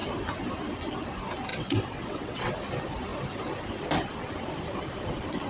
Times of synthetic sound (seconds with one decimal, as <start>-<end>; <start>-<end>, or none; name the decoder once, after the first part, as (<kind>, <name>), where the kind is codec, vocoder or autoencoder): 1.5-2.5 (vocoder, WaveNeXt)